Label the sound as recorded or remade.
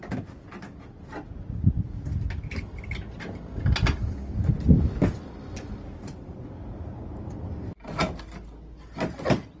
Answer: recorded